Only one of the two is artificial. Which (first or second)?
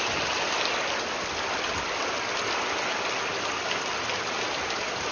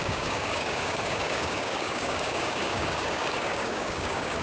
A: second